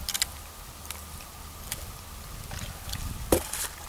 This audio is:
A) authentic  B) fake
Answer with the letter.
A